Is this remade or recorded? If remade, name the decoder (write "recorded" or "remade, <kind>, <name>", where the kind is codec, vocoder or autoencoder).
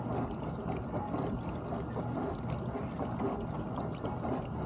recorded